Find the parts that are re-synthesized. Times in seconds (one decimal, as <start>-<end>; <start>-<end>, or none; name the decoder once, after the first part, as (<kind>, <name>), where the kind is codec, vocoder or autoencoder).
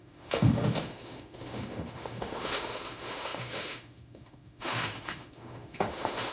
0.0-6.3 (autoencoder, DAC-VAE)